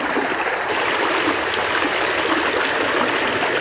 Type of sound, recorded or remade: recorded